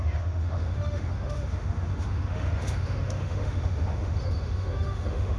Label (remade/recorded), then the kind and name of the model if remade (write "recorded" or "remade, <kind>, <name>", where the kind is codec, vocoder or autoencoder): remade, autoencoder, DAC-VAE